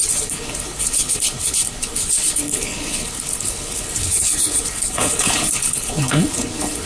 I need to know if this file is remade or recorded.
remade